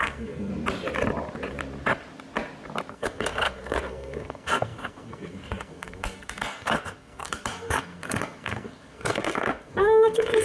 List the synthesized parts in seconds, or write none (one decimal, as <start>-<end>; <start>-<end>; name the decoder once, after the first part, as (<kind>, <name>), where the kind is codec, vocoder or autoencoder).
0.0-0.5 (codec, SNAC); 2.9-10.4